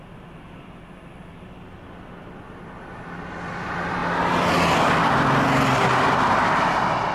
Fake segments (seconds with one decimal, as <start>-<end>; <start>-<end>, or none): none